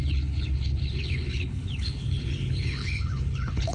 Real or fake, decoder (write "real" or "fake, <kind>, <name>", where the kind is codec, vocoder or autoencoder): fake, codec, HILCodec